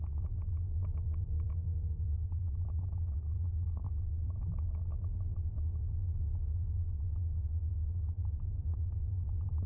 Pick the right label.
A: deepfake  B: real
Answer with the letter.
B